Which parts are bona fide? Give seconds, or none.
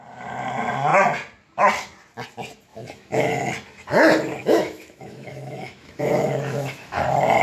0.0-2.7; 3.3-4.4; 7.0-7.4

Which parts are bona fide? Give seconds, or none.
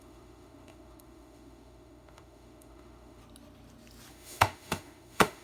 3.2-4.1